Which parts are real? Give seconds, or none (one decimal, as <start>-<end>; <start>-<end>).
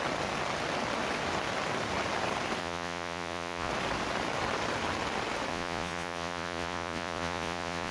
0.0-2.6; 3.7-5.5